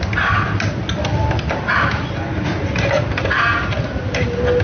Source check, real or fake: real